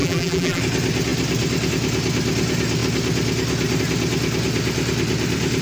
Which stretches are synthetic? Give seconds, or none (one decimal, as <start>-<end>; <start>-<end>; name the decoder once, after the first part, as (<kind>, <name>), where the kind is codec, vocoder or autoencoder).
0.0-0.6 (vocoder, BigVGAN v2)